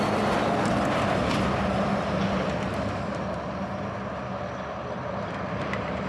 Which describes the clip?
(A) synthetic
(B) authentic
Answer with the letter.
B